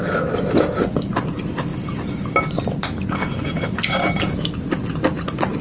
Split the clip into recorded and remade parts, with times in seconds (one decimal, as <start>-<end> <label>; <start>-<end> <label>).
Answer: 0.0-5.6 recorded